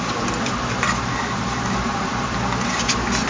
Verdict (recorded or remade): remade